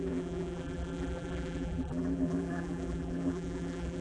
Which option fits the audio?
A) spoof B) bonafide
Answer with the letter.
A